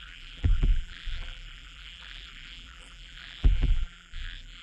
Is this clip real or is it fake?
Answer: fake